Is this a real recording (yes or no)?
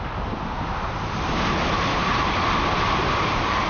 yes